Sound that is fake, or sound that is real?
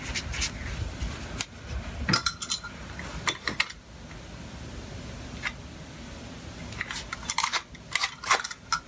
real